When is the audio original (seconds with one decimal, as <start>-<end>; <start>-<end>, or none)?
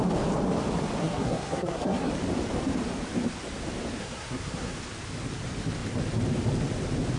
0.0-1.0; 2.1-4.0; 4.8-7.2